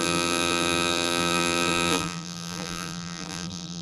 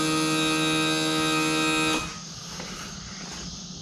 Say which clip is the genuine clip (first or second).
second